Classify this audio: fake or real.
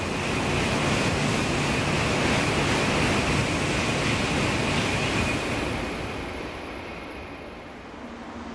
real